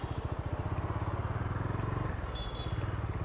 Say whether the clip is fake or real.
real